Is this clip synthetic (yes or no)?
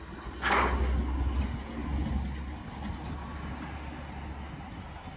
no